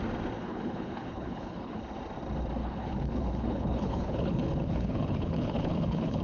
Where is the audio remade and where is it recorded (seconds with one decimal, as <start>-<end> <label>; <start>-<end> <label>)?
0.0-0.4 recorded; 0.4-1.8 remade; 1.8-2.6 recorded; 2.6-6.2 remade